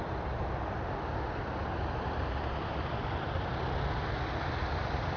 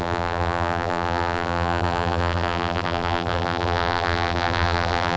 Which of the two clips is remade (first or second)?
second